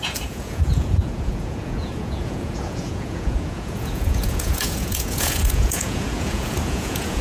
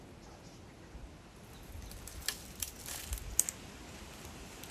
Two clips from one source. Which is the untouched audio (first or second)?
second